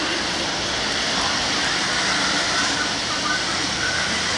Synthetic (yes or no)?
yes